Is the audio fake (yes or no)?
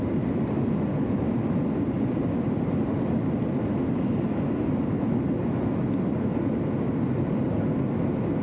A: no